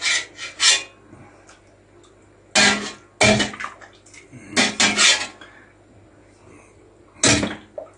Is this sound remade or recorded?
recorded